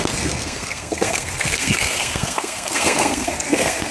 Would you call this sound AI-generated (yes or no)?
yes